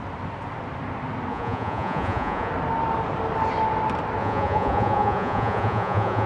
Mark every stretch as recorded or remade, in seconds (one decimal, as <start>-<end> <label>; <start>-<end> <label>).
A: 0.0-1.3 recorded; 1.3-2.5 remade; 2.5-4.2 recorded; 4.2-6.3 remade